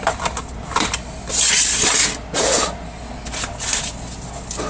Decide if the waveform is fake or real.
real